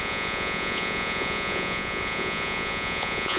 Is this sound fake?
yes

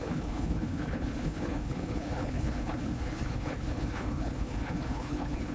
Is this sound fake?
yes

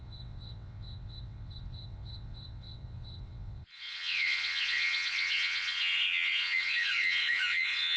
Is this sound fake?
yes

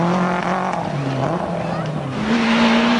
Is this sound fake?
no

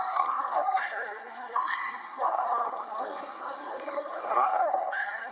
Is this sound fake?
yes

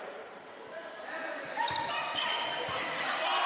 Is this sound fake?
yes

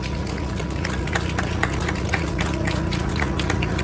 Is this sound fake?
yes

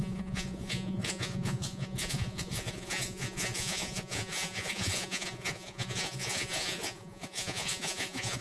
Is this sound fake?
yes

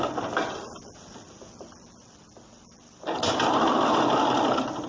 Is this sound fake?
no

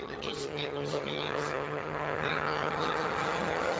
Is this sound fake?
yes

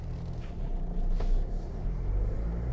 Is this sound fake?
no